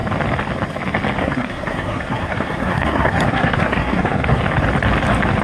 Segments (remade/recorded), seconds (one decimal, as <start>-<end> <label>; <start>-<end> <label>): 0.0-1.2 recorded; 1.2-4.4 remade; 4.4-5.4 recorded